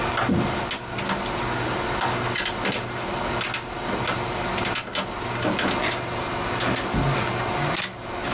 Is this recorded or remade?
recorded